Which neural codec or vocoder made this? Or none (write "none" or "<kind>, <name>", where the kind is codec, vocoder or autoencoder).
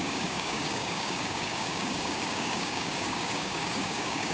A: codec, DAC